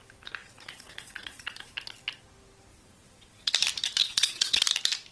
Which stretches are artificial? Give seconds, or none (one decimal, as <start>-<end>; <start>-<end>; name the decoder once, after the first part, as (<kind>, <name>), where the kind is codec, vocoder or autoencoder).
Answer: 0.4-1.7 (vocoder, Vocos); 2.7-3.5; 4.0-4.6